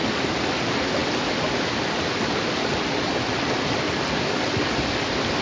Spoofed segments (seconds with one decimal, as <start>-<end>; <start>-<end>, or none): none